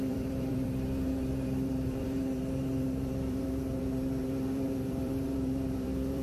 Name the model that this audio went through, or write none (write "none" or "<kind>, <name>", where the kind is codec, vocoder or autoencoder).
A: vocoder, BigVGAN v2